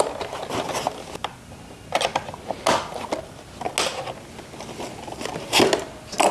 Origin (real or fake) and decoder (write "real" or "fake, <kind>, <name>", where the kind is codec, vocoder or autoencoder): real